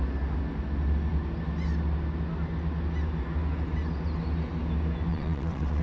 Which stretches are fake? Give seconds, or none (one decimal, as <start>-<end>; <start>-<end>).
5.1-5.8